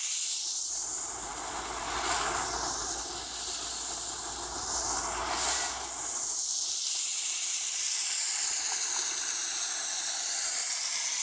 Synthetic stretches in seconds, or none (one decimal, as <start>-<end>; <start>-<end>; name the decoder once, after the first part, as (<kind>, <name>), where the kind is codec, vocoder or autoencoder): none